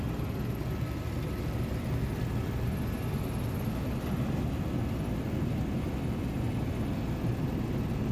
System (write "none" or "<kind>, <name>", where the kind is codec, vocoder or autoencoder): none